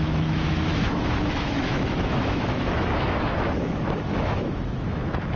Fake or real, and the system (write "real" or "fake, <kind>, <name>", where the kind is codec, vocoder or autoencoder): fake, autoencoder, DAC-VAE